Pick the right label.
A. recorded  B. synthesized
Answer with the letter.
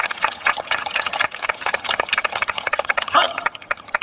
B